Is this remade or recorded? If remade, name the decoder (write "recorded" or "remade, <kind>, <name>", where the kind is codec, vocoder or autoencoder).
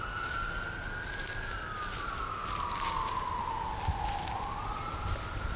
recorded